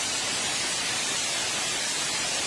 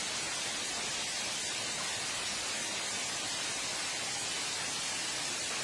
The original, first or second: second